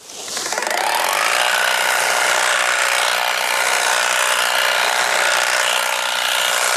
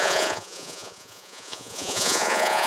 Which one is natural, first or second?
first